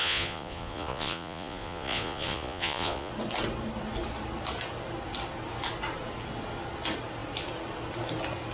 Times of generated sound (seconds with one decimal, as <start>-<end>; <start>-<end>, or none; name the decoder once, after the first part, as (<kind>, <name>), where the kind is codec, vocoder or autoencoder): 0.0-3.1 (vocoder, Vocos)